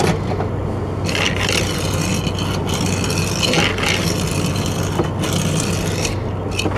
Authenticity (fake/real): real